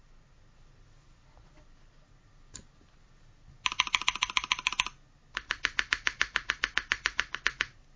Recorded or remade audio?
recorded